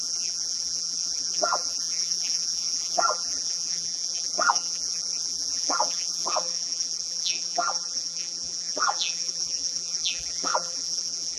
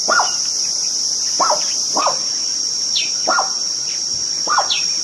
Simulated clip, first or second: first